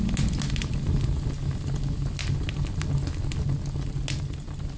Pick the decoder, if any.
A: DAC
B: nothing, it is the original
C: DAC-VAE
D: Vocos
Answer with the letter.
B